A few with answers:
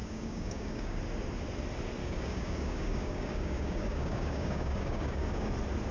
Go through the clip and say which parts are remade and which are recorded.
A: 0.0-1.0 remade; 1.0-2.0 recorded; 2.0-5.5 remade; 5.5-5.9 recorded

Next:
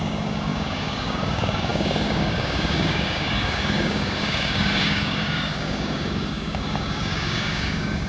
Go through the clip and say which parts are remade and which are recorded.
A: 0.0-8.1 remade

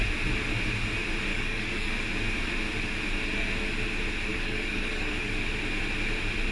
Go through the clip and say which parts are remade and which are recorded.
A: 0.0-1.3 recorded; 1.3-1.9 remade; 1.9-4.3 recorded; 4.3-5.3 remade; 5.3-6.5 recorded

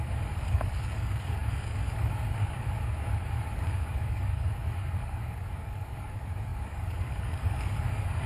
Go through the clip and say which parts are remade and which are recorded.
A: 0.0-8.3 remade